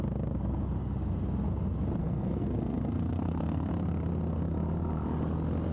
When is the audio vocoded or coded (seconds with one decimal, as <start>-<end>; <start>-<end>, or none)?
2.0-3.7